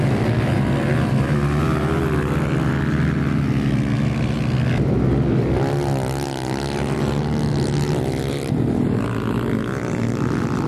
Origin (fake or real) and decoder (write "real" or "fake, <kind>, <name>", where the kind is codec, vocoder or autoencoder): real